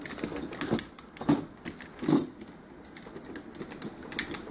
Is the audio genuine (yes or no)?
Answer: yes